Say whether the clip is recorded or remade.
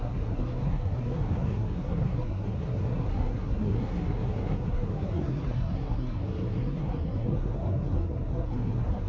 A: remade